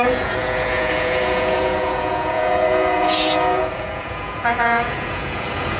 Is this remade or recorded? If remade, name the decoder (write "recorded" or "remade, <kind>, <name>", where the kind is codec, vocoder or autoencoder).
remade, vocoder, Vocos